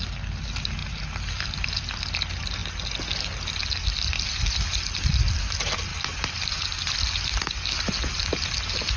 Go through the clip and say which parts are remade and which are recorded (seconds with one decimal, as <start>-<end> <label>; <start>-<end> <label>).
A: 0.0-9.0 recorded